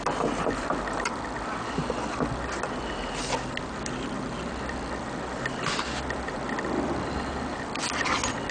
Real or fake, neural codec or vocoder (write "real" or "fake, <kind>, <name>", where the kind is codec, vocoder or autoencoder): real